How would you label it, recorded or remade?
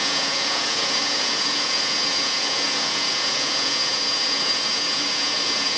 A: remade